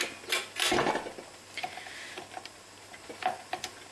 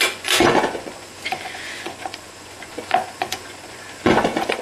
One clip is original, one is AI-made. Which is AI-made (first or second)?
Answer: second